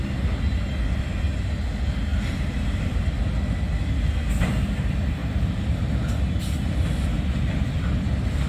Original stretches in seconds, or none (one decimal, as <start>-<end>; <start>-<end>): 0.0-2.1; 3.0-8.5